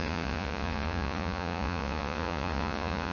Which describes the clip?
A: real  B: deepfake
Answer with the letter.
B